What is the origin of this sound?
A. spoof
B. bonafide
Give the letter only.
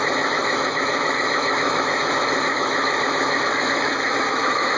A